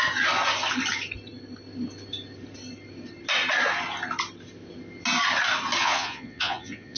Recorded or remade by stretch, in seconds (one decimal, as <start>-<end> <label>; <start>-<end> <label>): 0.0-5.8 recorded; 5.8-7.0 remade